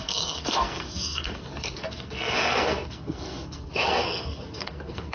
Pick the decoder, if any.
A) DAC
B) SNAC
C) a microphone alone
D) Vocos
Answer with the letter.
B